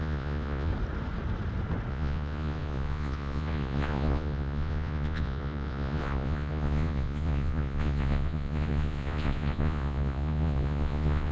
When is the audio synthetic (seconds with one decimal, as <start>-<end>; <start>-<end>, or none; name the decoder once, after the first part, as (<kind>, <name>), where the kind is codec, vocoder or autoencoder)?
0.0-0.7 (vocoder, Vocos); 1.9-11.3